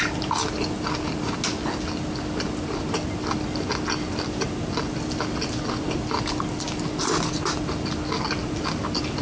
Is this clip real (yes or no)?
yes